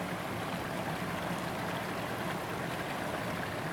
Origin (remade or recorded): recorded